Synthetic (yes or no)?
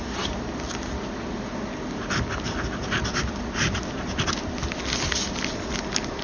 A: no